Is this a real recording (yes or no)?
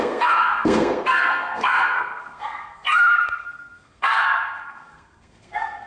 no